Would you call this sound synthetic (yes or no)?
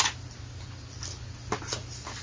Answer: no